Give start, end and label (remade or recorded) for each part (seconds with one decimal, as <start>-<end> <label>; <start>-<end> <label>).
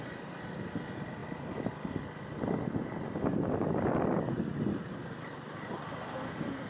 0.0-6.7 recorded